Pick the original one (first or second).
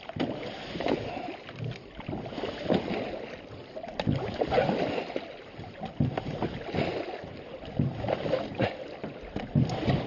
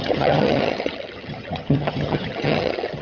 first